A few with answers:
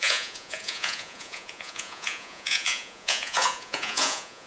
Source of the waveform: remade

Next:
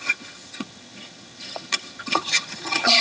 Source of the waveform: remade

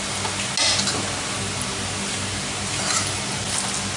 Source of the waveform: recorded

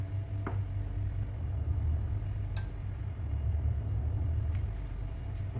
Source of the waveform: recorded